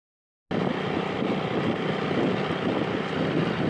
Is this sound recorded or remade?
recorded